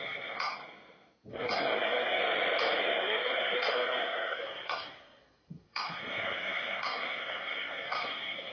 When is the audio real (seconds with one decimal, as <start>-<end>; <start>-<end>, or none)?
0.5-1.3; 2.2-2.8